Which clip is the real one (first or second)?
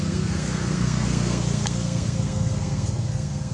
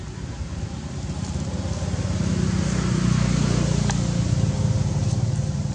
second